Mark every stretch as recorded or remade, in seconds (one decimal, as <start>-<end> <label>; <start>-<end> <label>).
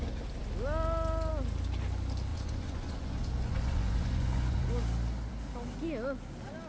0.0-2.3 recorded; 2.3-4.7 remade; 4.7-6.7 recorded